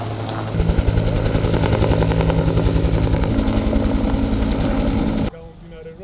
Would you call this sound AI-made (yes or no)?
no